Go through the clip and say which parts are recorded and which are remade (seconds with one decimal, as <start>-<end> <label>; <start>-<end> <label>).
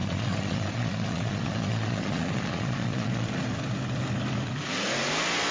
0.0-3.3 remade; 3.3-5.5 recorded